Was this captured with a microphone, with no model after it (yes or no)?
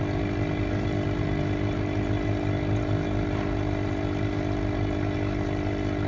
yes